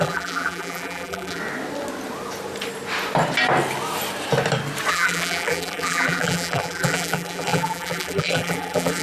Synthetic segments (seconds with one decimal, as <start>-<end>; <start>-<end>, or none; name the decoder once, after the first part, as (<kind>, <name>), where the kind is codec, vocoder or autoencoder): 0.0-1.4 (vocoder, BigVGAN v2); 4.9-9.0